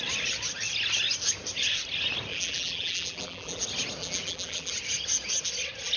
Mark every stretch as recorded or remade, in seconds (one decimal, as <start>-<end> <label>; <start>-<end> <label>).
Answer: 0.0-2.3 recorded; 2.3-3.6 remade; 3.6-4.0 recorded; 4.0-4.7 remade; 4.7-6.0 recorded